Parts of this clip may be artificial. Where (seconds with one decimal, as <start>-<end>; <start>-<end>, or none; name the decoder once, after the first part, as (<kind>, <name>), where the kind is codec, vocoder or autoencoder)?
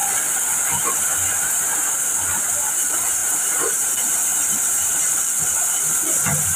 3.2-3.9 (vocoder, BigVGAN v2); 4.3-4.9